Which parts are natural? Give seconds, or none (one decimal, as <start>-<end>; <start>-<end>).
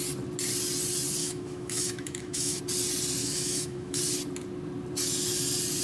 0.0-1.2; 2.6-3.2; 4.0-5.8